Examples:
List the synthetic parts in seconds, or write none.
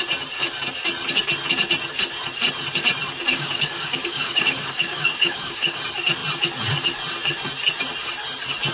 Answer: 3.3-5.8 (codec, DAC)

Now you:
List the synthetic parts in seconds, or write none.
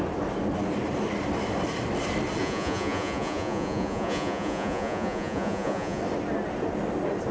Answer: 2.4-6.0 (vocoder, Vocos)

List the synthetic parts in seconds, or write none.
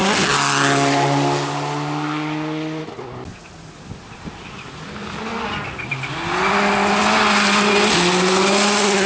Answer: none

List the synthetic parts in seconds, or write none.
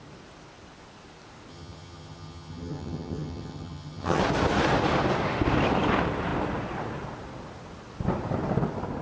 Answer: 1.5-4.2 (vocoder, HiFi-GAN)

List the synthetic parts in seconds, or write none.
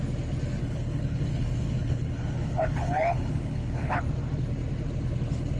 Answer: 0.6-4.0 (codec, HILCodec)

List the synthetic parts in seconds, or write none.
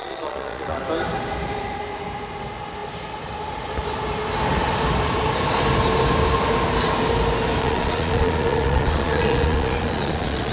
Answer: 0.0-0.8 (vocoder, Vocos); 7.6-10.5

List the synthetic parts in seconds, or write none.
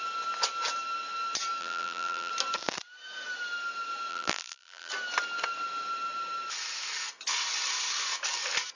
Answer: 1.6-2.3 (vocoder, BigVGAN v2); 4.1-4.9